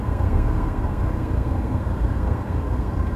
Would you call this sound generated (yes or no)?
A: yes